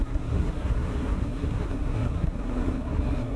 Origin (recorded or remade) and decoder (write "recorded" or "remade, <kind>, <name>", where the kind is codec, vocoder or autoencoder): remade, codec, SNAC